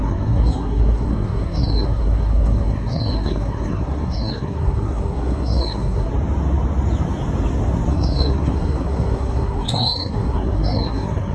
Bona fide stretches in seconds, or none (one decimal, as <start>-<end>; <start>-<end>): 6.1-7.9